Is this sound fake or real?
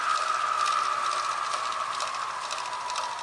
real